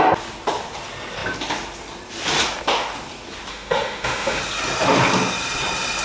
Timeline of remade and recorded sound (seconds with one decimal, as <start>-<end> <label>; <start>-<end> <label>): 0.0-3.5 recorded; 3.5-4.4 remade; 4.4-6.0 recorded